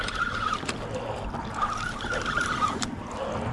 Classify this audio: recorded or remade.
recorded